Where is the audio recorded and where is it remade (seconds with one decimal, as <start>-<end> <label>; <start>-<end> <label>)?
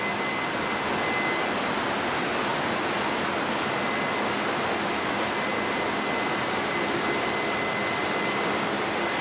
0.0-9.2 recorded